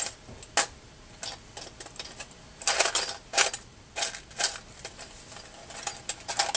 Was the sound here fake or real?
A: real